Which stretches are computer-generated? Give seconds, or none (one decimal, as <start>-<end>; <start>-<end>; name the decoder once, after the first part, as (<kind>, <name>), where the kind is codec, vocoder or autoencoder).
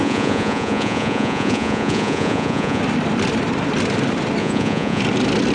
0.0-2.8 (vocoder, Vocos); 4.4-5.0